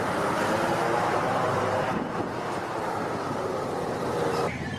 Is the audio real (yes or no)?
no